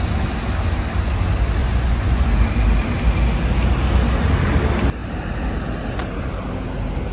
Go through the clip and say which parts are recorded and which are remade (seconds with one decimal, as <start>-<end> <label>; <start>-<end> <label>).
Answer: 0.0-1.6 recorded; 1.6-2.3 remade; 2.3-7.1 recorded